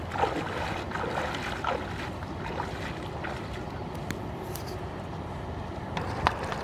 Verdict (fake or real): real